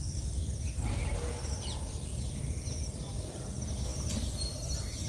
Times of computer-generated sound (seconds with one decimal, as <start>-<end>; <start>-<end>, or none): none